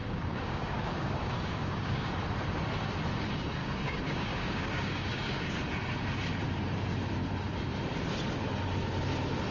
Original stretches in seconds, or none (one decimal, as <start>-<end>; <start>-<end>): 2.1-3.6; 5.5-9.5